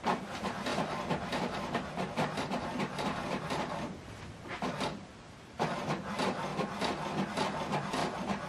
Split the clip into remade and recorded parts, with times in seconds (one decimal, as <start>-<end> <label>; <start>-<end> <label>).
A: 0.0-6.5 remade; 6.5-7.3 recorded; 7.3-8.5 remade